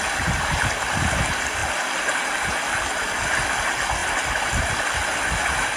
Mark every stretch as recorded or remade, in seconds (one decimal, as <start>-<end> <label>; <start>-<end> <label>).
0.0-5.8 recorded